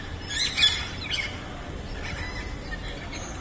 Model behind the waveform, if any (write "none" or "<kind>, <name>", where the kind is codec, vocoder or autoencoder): none